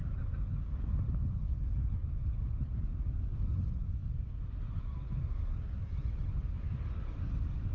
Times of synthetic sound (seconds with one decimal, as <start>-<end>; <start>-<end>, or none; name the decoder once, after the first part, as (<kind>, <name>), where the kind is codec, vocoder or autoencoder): none